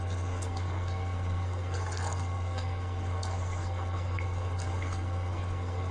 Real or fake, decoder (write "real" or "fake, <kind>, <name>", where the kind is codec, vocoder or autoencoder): fake, codec, SNAC